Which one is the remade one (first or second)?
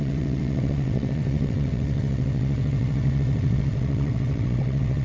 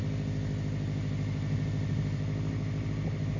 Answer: first